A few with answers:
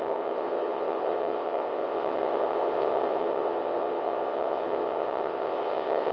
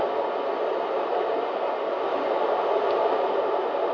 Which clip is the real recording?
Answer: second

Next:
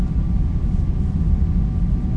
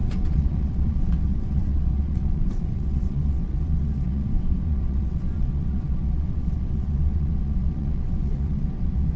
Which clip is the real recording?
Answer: first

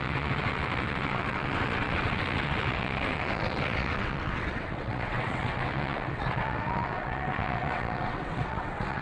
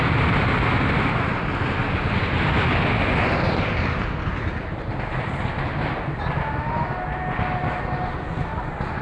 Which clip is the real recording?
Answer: second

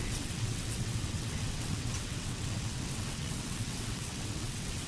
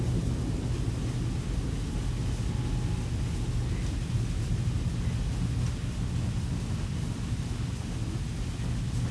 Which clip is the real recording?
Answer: second